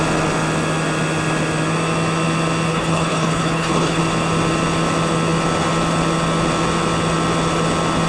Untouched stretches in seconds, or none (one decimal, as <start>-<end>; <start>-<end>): 0.0-2.7; 4.0-8.1